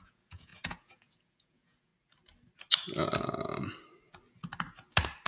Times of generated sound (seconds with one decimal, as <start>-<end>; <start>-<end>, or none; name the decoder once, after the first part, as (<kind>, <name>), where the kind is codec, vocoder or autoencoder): 0.0-1.9 (vocoder, Vocos)